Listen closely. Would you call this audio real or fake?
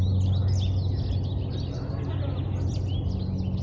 real